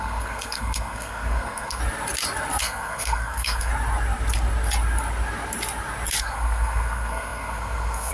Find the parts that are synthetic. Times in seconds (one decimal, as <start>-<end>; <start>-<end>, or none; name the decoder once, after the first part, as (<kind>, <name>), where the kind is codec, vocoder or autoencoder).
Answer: 0.0-1.8 (codec, SNAC); 2.6-3.7; 6.2-8.1